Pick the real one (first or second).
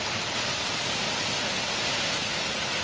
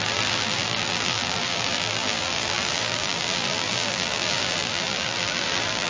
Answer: first